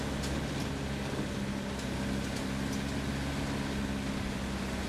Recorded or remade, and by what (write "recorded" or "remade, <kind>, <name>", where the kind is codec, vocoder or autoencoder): recorded